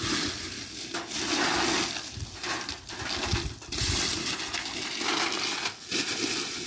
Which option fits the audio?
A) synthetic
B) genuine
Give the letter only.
B